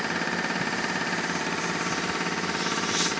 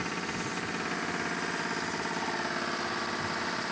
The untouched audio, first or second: second